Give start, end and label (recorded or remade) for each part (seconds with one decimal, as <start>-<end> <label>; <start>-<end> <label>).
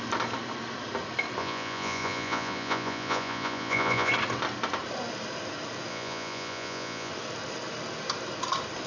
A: 0.0-1.4 recorded; 1.4-4.1 remade; 4.1-5.9 recorded; 5.9-7.1 remade; 7.1-8.9 recorded